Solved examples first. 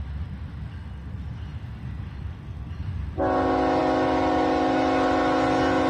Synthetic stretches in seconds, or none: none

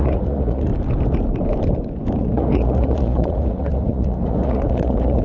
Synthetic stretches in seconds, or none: 0.0-0.7 (vocoder, Vocos); 2.2-5.2

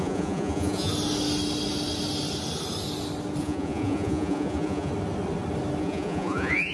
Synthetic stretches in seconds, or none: 0.0-0.9 (vocoder, Vocos); 3.4-4.9; 5.8-6.7

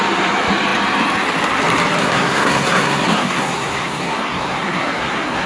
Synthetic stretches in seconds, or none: 2.0-5.5 (codec, SNAC)